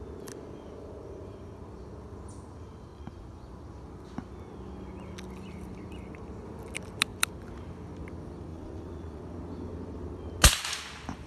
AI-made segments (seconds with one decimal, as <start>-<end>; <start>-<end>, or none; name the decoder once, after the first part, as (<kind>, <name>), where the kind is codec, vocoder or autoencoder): 2.9-3.5 (vocoder, Vocos); 8.5-9.2